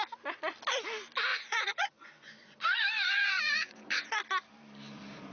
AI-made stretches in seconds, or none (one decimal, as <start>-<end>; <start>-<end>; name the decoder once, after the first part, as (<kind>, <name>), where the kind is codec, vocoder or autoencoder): 1.3-4.1 (vocoder, Vocos)

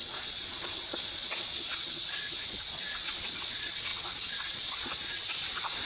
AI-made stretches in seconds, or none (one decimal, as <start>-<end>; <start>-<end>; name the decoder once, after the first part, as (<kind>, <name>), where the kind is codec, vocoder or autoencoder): 0.0-5.8 (vocoder, Vocos)